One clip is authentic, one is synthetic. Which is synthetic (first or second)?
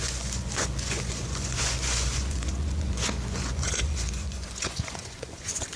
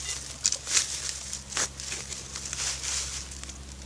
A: first